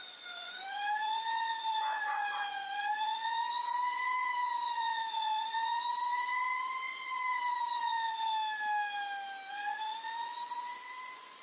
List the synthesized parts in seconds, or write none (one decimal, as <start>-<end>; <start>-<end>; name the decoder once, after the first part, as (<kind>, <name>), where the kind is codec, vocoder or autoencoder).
0.0-8.3 (vocoder, Vocos); 9.5-11.4